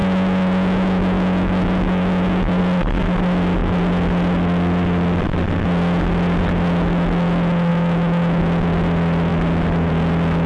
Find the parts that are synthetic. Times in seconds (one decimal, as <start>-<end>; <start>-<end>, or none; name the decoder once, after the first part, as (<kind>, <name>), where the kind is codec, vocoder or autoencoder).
0.0-2.6 (autoencoder, DAC-VAE); 7.7-8.4